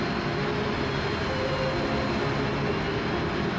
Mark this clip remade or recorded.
recorded